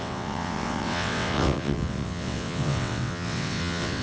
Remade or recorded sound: remade